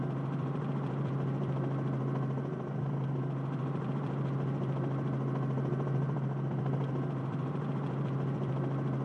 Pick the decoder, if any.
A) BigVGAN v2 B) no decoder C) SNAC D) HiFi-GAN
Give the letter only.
A